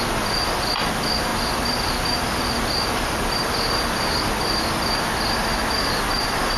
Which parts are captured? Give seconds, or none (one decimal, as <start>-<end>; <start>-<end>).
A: 0.0-6.6